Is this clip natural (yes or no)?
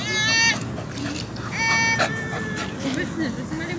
yes